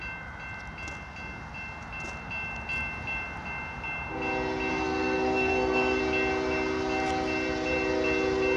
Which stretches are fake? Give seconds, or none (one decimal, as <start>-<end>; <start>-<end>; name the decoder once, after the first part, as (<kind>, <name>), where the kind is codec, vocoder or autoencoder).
4.7-6.0 (codec, SNAC)